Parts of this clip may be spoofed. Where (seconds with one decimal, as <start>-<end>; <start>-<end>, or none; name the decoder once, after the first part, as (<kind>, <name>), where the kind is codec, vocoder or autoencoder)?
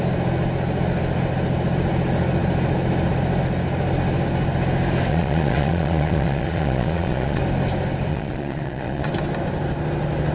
5.1-7.4 (vocoder, Vocos); 8.1-9.1